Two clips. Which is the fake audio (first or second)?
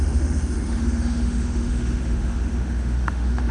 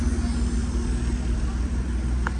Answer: first